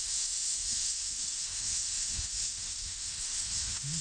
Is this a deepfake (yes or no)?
yes